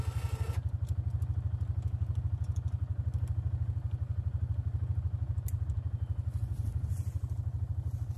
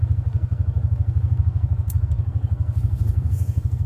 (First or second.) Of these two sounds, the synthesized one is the second